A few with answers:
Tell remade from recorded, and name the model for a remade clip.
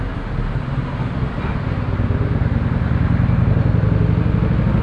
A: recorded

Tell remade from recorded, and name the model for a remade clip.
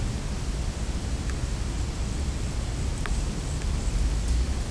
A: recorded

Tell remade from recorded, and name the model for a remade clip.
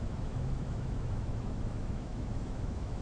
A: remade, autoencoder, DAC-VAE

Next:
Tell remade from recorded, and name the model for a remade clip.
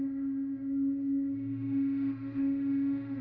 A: remade, autoencoder, DAC-VAE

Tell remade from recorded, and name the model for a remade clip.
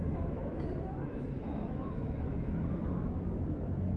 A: remade, autoencoder, DAC-VAE